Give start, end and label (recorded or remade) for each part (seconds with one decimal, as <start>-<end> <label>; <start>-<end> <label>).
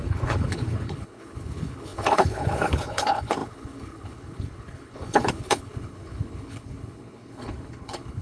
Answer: 0.0-8.2 remade